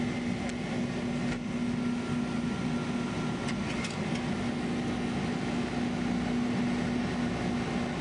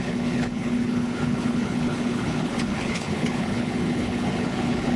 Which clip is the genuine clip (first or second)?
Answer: first